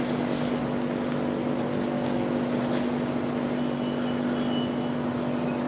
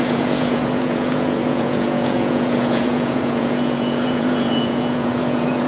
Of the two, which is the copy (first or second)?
second